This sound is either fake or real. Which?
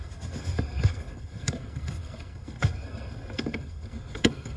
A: fake